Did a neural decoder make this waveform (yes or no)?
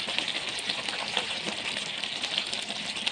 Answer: no